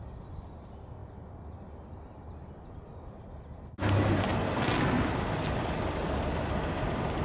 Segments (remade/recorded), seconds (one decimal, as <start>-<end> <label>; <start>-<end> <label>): 0.0-7.2 recorded